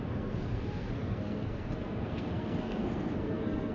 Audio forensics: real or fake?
fake